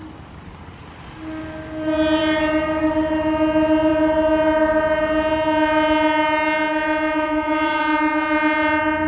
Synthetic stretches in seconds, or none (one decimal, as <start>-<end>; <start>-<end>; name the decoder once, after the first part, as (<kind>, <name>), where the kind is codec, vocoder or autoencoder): 7.2-7.8 (vocoder, Vocos)

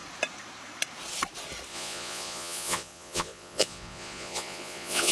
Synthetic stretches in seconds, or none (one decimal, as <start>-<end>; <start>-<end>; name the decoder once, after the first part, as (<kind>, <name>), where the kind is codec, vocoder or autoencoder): 1.7-5.1 (vocoder, Vocos)

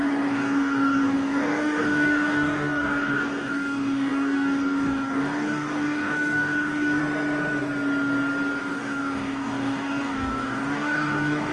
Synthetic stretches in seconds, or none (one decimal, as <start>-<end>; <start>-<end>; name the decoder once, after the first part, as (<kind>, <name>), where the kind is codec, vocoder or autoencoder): 0.0-7.0 (codec, DAC); 8.6-11.5

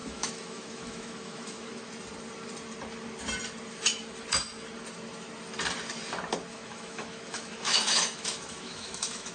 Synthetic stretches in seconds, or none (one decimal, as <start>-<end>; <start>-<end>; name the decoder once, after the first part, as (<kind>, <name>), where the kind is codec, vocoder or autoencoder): 0.0-1.9 (autoencoder, DAC-VAE); 6.5-9.3

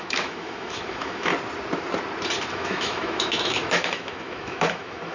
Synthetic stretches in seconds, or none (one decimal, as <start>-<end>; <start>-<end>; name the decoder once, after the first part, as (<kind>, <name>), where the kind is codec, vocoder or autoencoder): 0.0-1.3 (autoencoder, DAC-VAE); 2.5-5.1

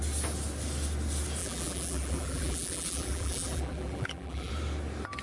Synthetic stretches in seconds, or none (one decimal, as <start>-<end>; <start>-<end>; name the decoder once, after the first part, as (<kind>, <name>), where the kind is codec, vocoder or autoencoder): 1.4-4.5 (vocoder, BigVGAN v2)